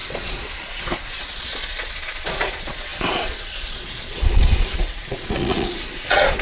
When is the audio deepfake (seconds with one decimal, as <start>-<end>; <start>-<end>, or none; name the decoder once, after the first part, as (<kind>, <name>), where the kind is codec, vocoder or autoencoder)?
0.0-6.4 (vocoder, Vocos)